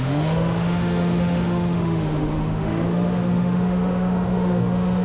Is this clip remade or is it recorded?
remade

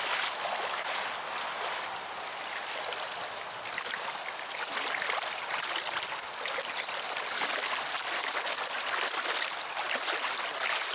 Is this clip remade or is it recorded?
recorded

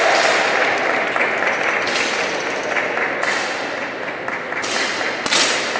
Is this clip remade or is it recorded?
recorded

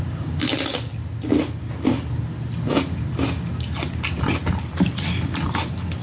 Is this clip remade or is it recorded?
recorded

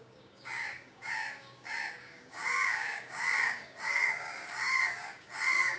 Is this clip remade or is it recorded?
remade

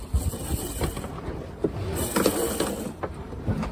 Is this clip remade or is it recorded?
recorded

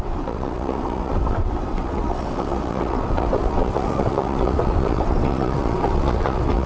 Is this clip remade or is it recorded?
remade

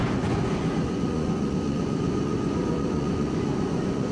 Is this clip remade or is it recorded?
remade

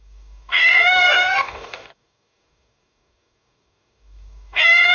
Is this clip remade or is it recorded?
remade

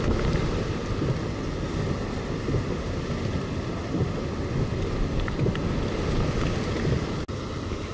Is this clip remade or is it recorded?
recorded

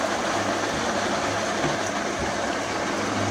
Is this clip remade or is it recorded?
recorded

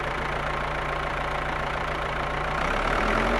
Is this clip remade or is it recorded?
remade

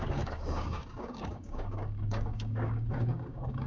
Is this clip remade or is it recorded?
remade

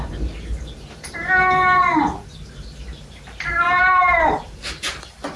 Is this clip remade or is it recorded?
remade